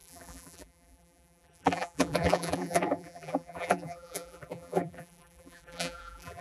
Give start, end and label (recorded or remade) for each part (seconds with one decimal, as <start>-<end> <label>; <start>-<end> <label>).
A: 0.0-6.4 remade